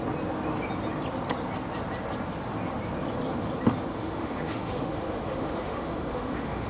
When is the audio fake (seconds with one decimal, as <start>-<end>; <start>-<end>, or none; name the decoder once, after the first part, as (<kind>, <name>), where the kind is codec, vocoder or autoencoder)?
3.9-6.7 (autoencoder, DAC-VAE)